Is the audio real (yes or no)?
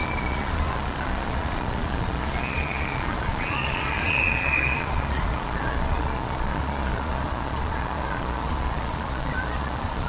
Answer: no